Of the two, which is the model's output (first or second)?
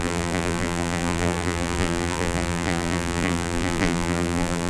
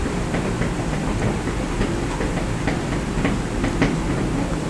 first